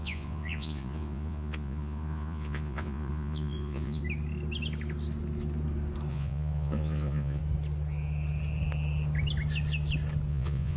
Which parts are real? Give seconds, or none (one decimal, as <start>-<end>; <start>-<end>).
4.0-6.1; 7.4-10.3